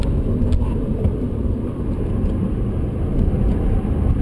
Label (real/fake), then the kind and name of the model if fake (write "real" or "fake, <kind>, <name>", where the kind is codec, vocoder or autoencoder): fake, vocoder, BigVGAN v2